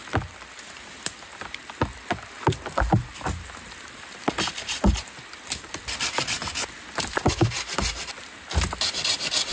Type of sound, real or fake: real